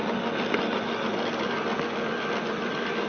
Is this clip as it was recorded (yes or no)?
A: yes